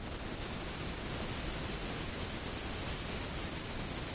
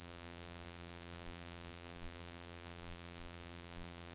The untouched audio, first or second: first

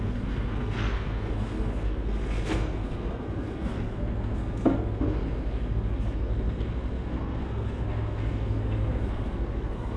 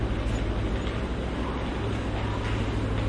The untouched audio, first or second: second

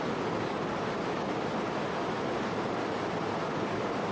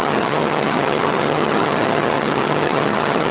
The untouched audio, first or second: first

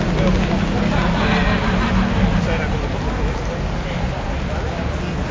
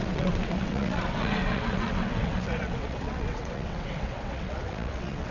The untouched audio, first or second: first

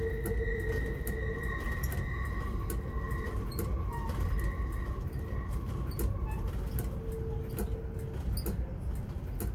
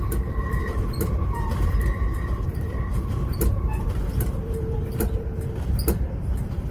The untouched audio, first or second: first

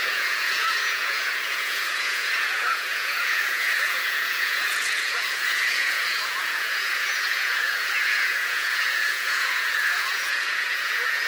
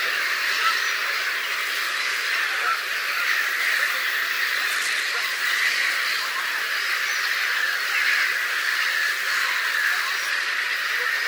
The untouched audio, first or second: second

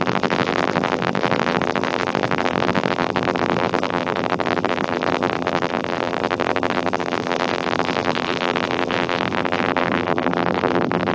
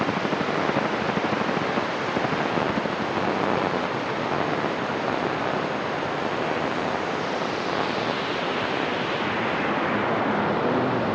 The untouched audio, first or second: second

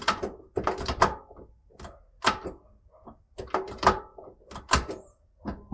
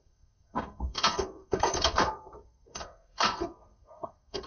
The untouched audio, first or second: first